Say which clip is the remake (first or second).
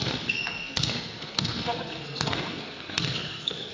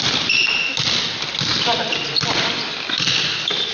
first